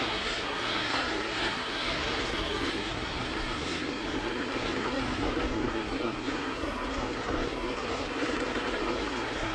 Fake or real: fake